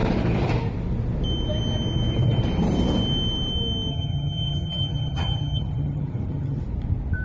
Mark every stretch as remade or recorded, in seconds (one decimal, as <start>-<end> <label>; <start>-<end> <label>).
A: 0.0-3.9 recorded; 3.9-6.6 remade; 6.6-7.2 recorded